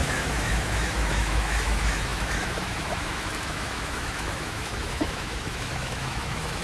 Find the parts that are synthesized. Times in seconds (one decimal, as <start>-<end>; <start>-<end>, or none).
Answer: 0.0-6.6